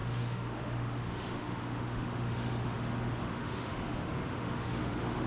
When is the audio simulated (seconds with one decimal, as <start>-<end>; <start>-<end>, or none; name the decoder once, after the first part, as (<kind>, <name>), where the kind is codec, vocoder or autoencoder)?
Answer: 0.0-5.3 (autoencoder, DAC-VAE)